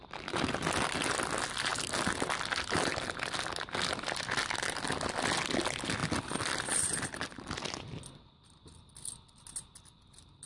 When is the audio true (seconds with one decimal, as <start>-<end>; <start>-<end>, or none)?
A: 0.0-10.5